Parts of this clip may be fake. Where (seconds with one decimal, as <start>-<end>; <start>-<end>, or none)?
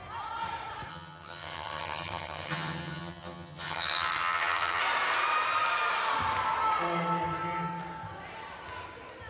0.9-4.8